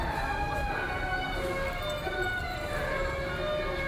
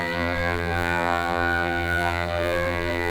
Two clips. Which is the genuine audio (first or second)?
first